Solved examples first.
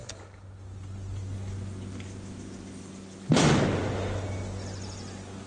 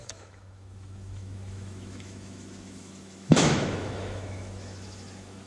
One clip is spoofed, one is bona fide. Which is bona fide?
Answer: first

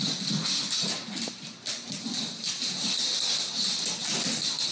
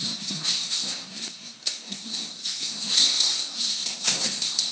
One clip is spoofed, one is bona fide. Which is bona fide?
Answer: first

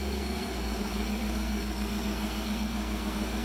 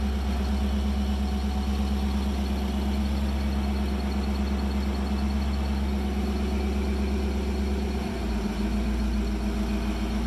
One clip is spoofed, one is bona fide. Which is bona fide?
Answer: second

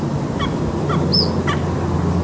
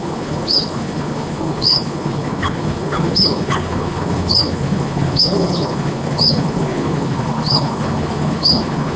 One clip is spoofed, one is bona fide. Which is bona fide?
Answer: first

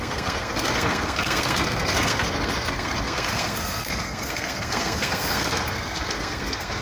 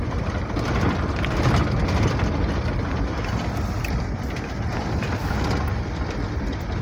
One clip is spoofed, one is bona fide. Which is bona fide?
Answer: second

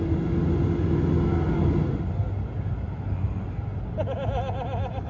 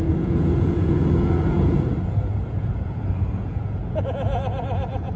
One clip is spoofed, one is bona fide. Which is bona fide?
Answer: first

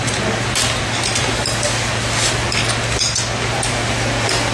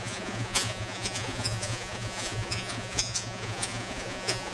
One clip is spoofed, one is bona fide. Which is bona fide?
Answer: first